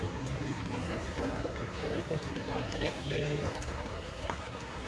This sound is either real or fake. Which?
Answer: fake